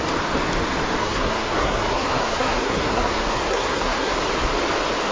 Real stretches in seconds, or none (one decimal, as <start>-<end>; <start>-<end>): 0.0-1.0; 4.1-5.1